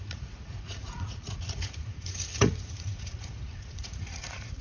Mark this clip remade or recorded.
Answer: remade